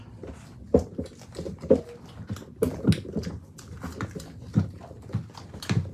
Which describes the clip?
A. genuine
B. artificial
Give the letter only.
A